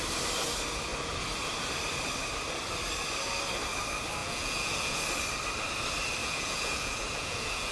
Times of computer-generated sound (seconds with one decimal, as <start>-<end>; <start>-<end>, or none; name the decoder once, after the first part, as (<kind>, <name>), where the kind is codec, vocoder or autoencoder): 4.2-5.0 (vocoder, Vocos); 6.2-7.7